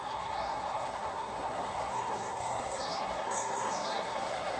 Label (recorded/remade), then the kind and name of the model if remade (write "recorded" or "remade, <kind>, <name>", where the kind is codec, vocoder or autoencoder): remade, codec, SNAC